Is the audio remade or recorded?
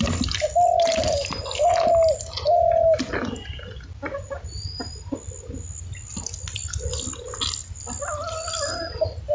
recorded